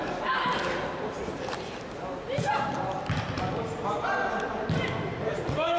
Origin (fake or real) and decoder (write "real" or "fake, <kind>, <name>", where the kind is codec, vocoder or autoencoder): real